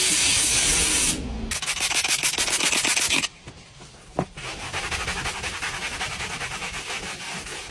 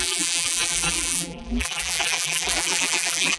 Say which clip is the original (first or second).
first